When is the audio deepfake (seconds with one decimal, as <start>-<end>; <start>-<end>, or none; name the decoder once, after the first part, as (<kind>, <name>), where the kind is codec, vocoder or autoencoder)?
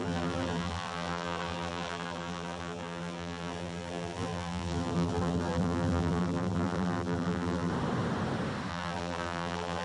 0.0-7.7 (vocoder, BigVGAN v2); 8.7-9.8